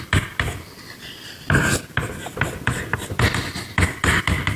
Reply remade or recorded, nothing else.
remade